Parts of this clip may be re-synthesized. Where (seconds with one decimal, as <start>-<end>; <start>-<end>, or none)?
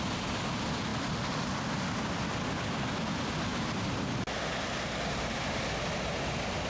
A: none